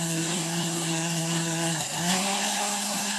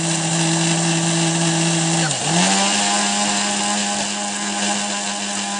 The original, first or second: second